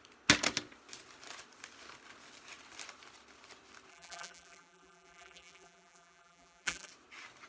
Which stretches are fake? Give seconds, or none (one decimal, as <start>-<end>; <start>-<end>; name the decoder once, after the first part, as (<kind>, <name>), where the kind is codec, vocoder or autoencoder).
3.9-6.9 (vocoder, BigVGAN v2)